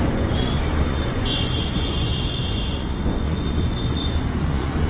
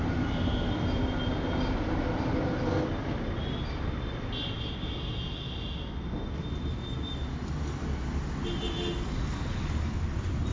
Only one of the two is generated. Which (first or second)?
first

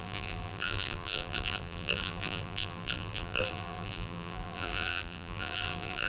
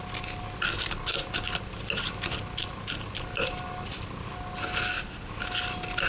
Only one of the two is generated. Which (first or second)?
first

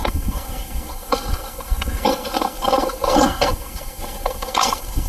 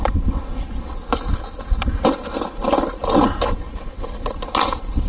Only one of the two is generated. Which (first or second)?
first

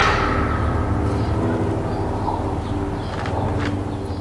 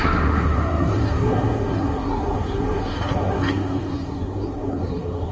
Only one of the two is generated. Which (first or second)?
second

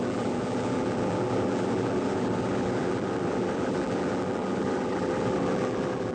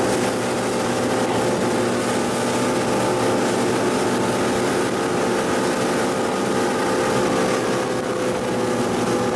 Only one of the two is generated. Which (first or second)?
first